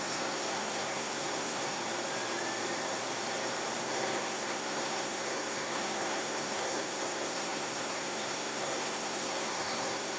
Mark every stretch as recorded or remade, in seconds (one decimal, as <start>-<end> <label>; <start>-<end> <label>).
0.0-1.8 remade; 1.8-3.8 recorded; 3.8-10.2 remade